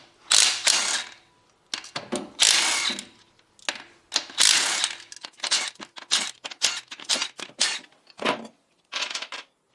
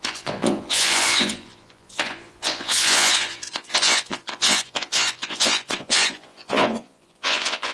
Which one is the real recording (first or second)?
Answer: first